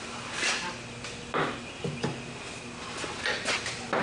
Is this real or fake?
real